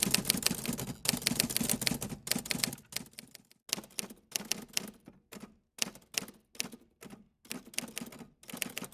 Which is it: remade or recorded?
recorded